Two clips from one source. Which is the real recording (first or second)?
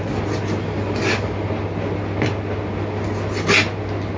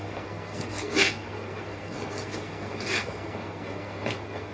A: first